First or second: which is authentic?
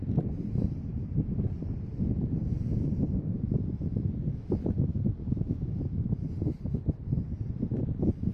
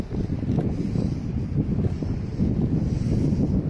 first